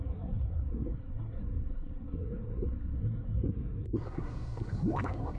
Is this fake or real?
fake